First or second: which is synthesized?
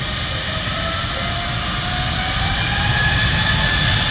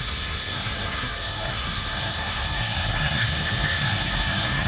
second